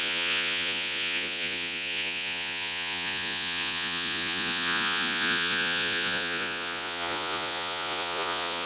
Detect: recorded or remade remade